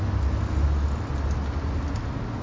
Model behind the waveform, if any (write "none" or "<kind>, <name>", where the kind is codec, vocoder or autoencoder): none